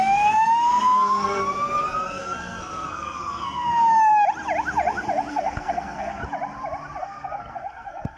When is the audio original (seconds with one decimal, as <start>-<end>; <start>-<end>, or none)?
1.4-2.1; 4.1-5.3; 6.2-7.0